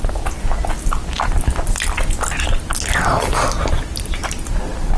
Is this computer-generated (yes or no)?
no